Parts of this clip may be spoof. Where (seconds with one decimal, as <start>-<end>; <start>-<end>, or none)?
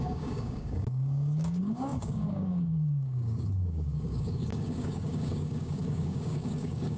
0.0-7.0